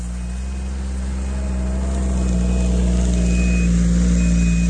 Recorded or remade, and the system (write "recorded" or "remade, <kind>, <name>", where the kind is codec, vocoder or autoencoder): recorded